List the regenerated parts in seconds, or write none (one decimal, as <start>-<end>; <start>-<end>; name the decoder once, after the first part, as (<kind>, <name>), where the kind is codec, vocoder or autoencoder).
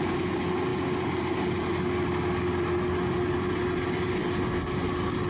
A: none